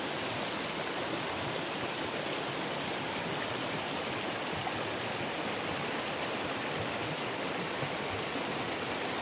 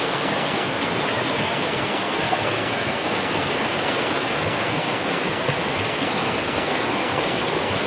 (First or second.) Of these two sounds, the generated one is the second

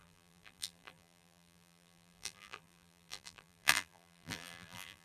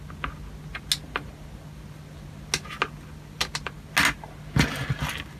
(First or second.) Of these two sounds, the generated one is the first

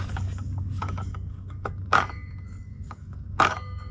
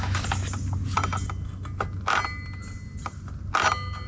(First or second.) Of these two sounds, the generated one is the first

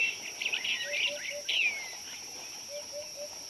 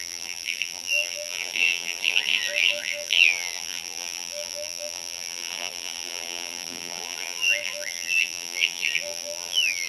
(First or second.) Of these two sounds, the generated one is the second